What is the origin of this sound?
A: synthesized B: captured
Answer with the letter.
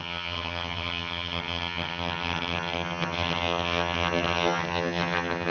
A